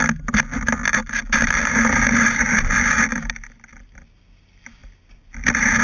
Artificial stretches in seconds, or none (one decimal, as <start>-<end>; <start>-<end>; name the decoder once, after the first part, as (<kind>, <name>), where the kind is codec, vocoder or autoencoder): 1.0-1.9 (vocoder, BigVGAN v2)

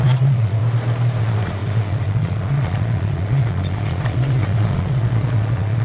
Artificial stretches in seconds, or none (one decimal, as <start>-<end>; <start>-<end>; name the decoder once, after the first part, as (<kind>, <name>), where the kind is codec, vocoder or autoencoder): 0.0-0.6 (vocoder, Vocos); 1.2-5.8

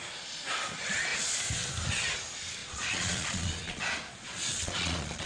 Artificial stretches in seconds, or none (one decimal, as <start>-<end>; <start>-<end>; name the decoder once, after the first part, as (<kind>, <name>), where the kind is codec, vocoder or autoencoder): 2.6-3.8 (vocoder, Vocos); 4.2-5.3

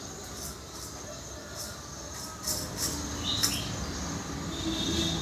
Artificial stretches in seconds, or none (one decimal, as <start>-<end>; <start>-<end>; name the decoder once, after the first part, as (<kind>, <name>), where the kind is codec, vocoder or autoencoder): none

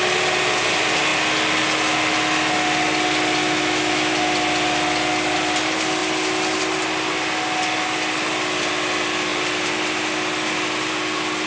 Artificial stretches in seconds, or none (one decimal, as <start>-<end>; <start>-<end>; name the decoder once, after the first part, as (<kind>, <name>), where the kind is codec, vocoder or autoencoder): 3.4-4.1 (autoencoder, DAC-VAE)